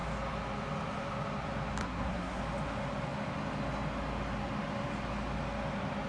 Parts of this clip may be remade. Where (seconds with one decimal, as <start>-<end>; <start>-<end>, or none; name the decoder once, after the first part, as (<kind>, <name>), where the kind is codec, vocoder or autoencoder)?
1.8-2.4 (codec, SNAC)

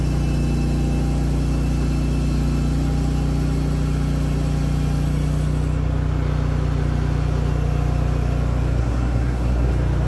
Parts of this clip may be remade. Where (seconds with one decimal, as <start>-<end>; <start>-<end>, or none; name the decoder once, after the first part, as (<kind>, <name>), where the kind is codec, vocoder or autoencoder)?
8.8-9.7 (codec, SNAC)

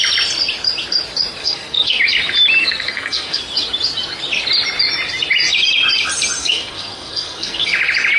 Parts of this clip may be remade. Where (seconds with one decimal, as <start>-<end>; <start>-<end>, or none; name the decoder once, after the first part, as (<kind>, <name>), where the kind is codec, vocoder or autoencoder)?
1.4-2.0 (codec, SNAC); 2.6-3.4; 6.4-7.7